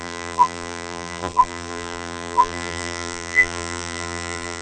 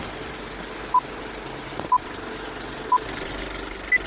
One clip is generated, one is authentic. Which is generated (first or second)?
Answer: first